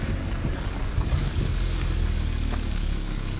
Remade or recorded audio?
remade